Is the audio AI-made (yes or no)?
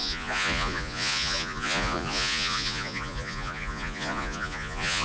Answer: yes